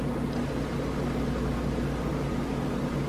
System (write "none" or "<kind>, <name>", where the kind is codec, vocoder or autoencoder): vocoder, BigVGAN v2